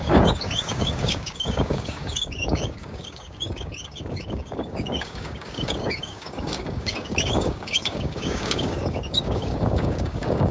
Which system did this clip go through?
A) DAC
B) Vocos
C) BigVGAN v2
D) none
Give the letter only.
A